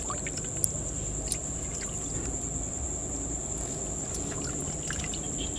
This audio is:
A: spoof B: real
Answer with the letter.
B